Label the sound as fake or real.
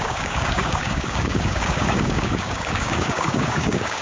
fake